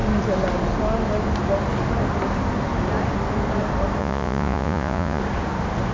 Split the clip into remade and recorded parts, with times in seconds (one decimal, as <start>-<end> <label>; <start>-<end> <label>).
0.0-4.0 recorded; 4.0-5.2 remade; 5.2-5.9 recorded